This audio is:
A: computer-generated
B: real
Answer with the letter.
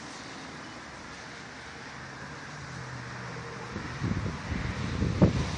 B